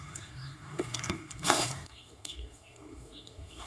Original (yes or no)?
no